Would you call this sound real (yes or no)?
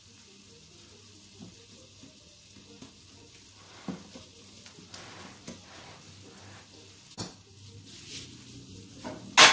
yes